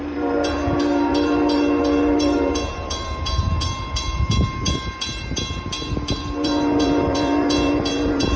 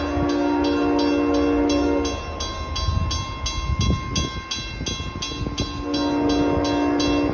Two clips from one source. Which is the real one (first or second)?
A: second